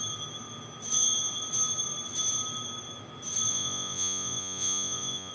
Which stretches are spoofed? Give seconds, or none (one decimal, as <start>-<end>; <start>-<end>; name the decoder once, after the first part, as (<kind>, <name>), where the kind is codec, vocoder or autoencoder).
3.5-5.3 (vocoder, Vocos)